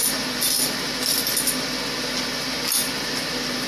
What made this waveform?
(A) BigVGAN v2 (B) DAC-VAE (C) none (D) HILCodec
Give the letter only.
C